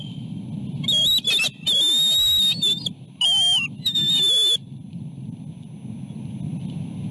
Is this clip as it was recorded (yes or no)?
yes